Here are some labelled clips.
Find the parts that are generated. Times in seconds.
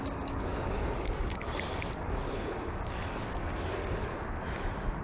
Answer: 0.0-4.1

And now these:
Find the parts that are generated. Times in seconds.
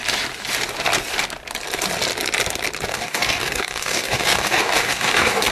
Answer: 2.9-5.5